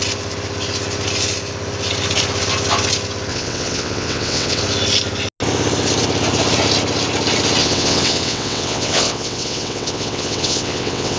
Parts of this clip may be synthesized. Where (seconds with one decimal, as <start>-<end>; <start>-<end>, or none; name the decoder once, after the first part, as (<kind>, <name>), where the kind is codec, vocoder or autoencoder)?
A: 3.3-4.6 (vocoder, WaveNeXt); 7.6-11.2